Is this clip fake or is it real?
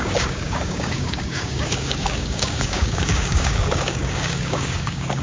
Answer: fake